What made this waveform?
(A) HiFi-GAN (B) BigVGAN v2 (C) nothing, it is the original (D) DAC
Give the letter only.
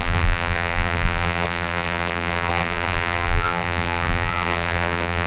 B